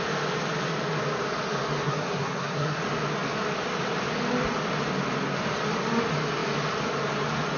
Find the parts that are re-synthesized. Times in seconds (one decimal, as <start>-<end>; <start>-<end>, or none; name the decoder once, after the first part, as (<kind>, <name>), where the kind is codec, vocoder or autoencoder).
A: 1.8-2.8 (codec, SNAC)